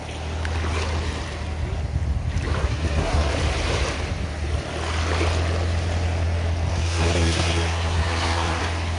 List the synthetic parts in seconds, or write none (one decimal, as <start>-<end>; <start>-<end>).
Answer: 2.6-3.3; 6.7-8.6